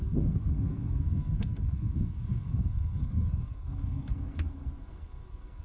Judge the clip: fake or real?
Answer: fake